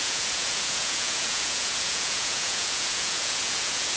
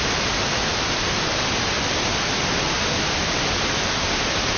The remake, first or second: first